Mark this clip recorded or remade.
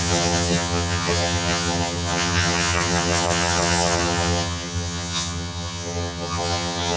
remade